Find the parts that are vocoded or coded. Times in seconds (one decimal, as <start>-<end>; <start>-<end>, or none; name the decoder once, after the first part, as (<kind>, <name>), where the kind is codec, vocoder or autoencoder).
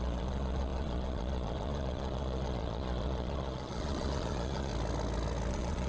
0.0-4.7 (vocoder, Vocos); 5.5-5.9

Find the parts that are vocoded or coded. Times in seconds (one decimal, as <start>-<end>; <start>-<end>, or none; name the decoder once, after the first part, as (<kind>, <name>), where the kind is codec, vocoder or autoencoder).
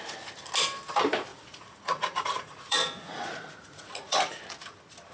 1.3-4.4 (vocoder, Vocos)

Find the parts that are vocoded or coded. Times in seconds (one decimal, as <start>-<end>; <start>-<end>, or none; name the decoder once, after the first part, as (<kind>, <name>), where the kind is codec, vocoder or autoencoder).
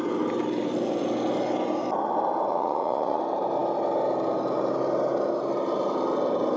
2.5-3.2 (vocoder, Vocos)